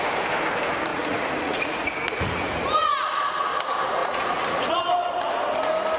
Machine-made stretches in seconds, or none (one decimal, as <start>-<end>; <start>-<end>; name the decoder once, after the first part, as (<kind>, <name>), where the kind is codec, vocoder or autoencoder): 0.9-3.1 (vocoder, Vocos); 4.0-4.8

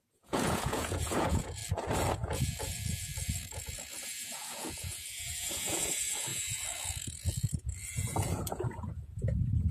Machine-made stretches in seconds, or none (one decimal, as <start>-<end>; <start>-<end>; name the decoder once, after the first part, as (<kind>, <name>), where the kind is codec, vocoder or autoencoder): 0.0-1.6 (vocoder, Vocos); 2.1-9.7